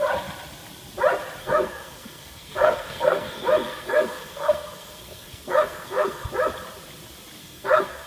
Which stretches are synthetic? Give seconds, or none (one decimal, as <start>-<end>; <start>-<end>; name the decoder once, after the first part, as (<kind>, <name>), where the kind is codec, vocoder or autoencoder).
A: 1.4-6.3 (codec, SNAC); 7.4-8.1